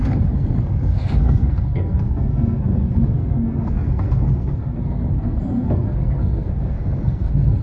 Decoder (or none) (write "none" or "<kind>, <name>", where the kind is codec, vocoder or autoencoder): codec, SNAC